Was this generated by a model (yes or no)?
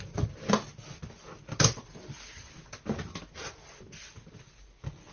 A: no